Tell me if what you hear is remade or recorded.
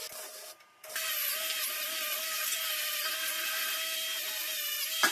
recorded